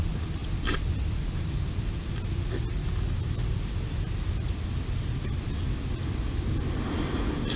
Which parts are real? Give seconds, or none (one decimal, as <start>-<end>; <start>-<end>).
0.0-7.6